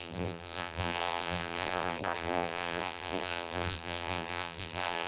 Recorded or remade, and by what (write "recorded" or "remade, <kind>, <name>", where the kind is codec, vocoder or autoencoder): remade, vocoder, BigVGAN v2